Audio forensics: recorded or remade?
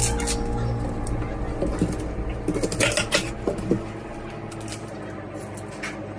recorded